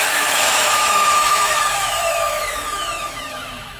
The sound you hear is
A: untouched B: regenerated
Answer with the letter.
B